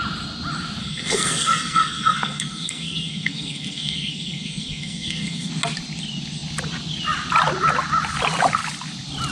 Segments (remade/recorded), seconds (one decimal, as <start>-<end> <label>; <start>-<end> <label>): 0.0-0.8 recorded; 0.8-5.5 remade; 5.5-9.3 recorded